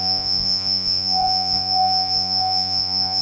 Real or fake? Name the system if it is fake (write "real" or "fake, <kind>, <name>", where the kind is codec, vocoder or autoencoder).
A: fake, vocoder, Vocos